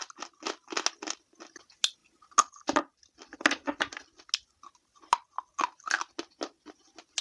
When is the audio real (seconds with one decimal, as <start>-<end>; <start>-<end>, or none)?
0.0-7.2